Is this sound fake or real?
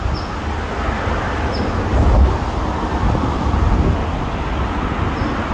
real